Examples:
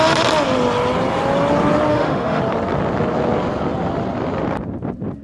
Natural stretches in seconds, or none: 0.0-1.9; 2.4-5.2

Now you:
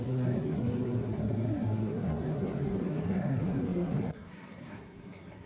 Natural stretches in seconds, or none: none

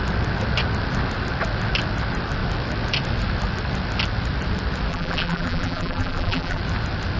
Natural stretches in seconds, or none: 0.0-4.9; 6.6-7.2

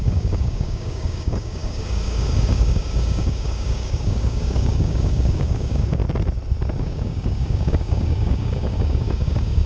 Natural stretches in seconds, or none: 6.0-6.8

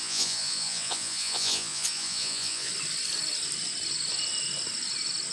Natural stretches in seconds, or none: 2.7-5.3

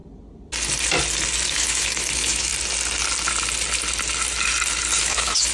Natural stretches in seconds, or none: 0.0-1.5; 2.5-5.0